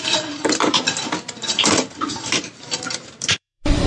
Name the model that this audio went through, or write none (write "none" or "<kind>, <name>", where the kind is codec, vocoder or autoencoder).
vocoder, BigVGAN v2